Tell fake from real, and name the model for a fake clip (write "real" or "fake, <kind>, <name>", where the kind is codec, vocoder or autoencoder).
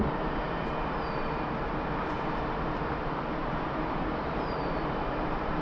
fake, vocoder, BigVGAN v2